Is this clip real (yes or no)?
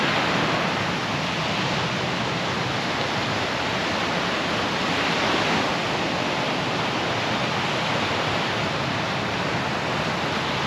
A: yes